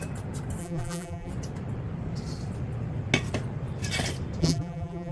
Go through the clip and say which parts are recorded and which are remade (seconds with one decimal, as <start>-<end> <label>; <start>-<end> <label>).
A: 0.0-0.6 recorded; 0.6-1.3 remade; 1.3-4.4 recorded; 4.4-5.1 remade